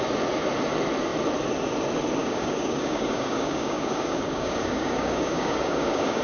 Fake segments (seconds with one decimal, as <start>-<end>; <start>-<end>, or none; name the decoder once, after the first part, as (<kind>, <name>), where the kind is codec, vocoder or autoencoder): 2.2-6.2 (codec, DAC)